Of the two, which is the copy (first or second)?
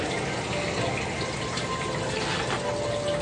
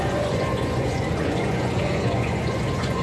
second